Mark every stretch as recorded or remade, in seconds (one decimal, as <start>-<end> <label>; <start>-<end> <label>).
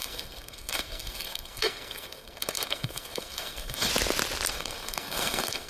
0.0-3.9 remade; 3.9-4.5 recorded; 4.5-5.7 remade